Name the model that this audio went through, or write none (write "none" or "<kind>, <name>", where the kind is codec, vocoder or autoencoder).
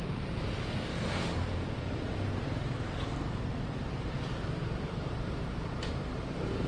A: vocoder, BigVGAN v2